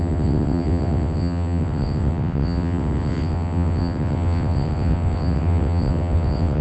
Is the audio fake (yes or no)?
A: yes